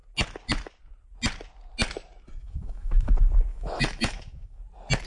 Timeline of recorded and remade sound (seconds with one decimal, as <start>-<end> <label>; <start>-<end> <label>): 0.0-2.4 recorded; 2.4-3.1 remade; 3.1-3.5 recorded; 3.5-4.6 remade; 4.6-5.1 recorded